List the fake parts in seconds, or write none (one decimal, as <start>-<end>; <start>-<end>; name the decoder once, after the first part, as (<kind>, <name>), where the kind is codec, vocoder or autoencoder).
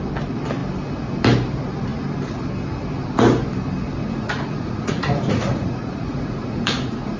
4.0-7.2 (vocoder, Vocos)